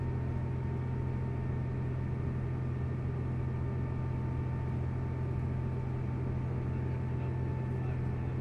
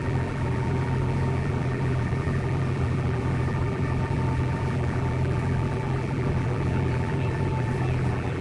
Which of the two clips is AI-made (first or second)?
second